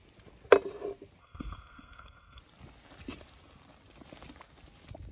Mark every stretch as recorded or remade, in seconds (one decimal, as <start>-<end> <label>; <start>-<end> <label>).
0.0-1.2 recorded; 1.2-2.4 remade; 2.4-5.1 recorded